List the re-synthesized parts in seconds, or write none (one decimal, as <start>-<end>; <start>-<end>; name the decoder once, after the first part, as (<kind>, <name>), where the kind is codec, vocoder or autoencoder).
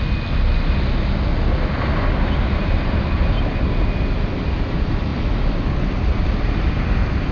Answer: none